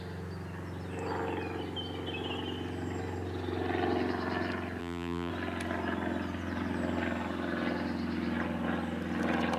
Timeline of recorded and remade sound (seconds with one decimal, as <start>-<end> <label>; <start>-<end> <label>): 0.0-4.8 recorded; 4.8-5.3 remade; 5.3-9.6 recorded